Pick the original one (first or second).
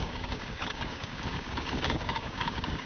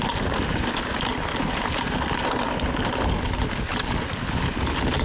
second